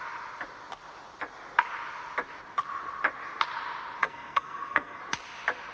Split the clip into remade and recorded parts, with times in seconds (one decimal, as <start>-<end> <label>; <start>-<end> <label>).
0.0-4.0 recorded; 4.0-5.0 remade; 5.0-5.7 recorded